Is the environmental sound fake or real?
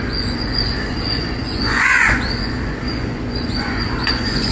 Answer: fake